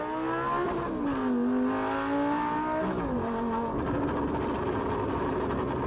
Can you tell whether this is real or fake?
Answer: real